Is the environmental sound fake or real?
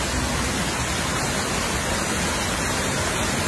real